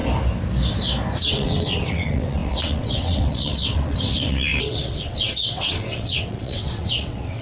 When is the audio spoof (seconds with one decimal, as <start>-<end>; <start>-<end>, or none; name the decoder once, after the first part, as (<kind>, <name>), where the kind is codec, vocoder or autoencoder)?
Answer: 1.2-7.4 (vocoder, WaveNeXt)